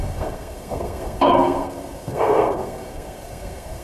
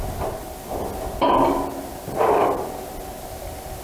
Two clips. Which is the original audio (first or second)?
second